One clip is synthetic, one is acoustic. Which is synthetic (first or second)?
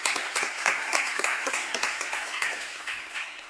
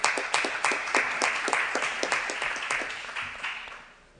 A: first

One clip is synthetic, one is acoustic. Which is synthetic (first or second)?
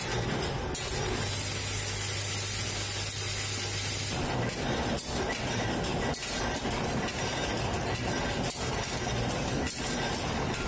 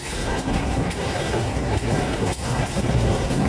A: second